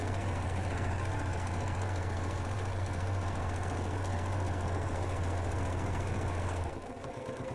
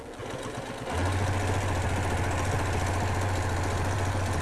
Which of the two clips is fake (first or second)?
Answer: first